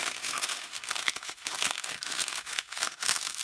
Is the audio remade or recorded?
remade